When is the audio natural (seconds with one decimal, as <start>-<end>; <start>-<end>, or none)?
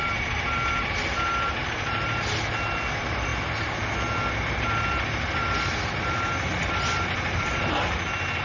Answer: 0.0-1.6; 2.5-8.4